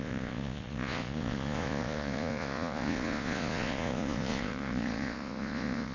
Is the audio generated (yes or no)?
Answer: yes